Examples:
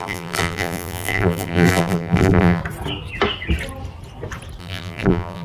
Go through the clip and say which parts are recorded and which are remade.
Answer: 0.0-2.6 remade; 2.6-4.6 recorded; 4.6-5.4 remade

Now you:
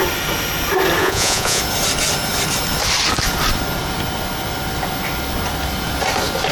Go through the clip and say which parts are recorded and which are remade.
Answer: 0.0-1.0 recorded; 1.0-1.6 remade; 1.6-6.5 recorded